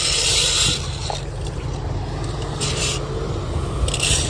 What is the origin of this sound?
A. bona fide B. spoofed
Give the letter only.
A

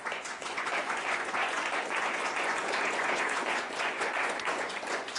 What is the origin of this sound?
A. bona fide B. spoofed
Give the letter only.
B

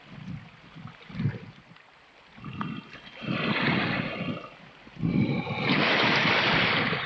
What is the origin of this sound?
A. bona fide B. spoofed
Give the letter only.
A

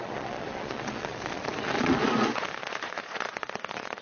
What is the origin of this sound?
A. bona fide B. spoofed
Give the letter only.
B